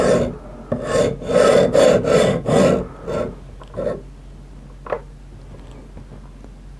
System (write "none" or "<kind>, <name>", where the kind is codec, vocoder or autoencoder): none